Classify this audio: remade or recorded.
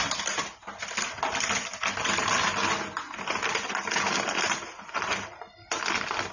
recorded